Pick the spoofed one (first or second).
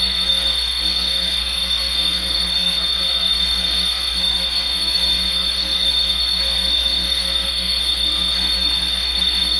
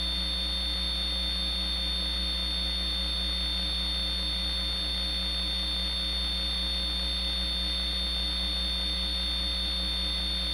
first